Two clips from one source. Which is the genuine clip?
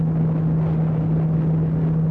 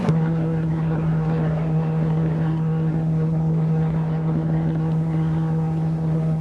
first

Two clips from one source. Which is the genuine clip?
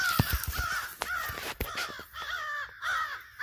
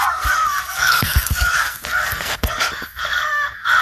first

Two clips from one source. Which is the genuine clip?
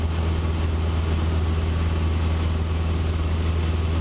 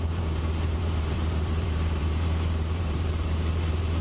first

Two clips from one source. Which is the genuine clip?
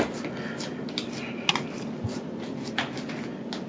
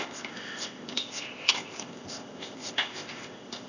first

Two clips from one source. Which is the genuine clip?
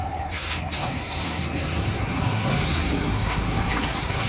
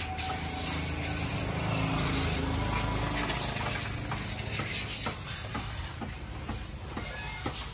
second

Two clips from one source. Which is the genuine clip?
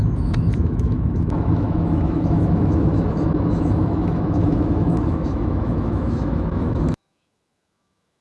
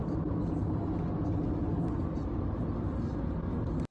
second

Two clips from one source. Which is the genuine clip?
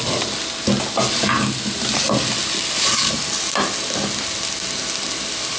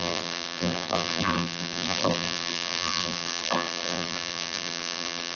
first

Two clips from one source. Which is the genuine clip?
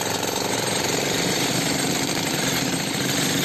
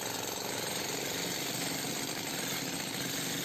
second